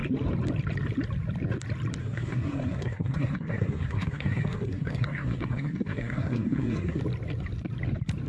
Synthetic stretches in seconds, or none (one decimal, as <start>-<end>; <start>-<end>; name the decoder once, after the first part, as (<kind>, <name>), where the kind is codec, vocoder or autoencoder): 2.0-7.0 (codec, SNAC)